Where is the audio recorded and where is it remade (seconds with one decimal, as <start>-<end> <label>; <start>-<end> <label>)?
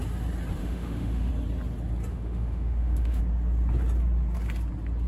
0.0-0.6 recorded; 0.6-1.3 remade; 1.3-2.1 recorded; 2.1-3.2 remade; 3.2-5.1 recorded